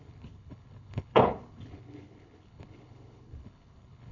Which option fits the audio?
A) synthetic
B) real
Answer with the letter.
A